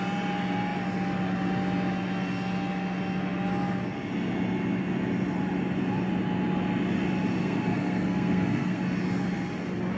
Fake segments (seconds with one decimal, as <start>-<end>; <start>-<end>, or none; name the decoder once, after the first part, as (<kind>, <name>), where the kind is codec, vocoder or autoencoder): 7.4-8.8 (codec, SNAC)